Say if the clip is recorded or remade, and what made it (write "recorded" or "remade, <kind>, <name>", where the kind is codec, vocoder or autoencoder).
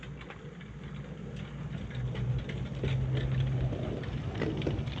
recorded